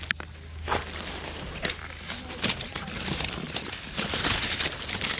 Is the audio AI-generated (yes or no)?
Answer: no